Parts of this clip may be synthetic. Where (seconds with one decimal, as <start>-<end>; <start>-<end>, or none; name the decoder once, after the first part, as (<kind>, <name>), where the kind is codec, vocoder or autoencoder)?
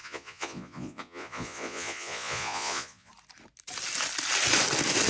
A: 0.0-3.1 (vocoder, Vocos)